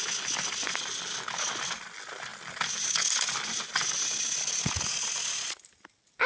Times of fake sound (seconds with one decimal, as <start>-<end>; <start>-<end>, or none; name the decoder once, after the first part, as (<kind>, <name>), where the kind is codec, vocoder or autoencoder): none

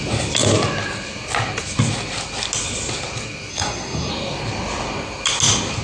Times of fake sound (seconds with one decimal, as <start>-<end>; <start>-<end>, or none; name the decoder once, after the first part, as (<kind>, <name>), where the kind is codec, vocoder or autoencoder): 3.5-4.1 (codec, SNAC)

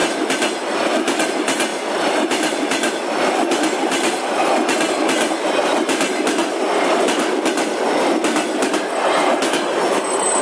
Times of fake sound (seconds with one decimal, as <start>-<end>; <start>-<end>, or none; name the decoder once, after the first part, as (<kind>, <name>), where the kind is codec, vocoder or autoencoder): 1.7-4.5 (vocoder, BigVGAN v2); 6.4-7.9